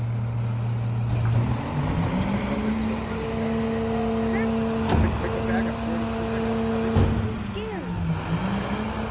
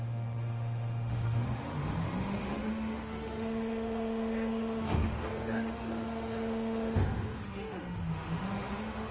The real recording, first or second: first